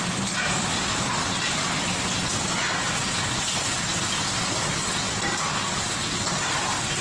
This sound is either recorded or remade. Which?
recorded